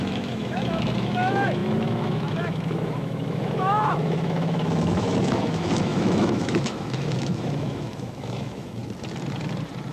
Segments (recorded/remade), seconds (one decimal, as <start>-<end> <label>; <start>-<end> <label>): 0.0-8.8 remade; 8.8-9.9 recorded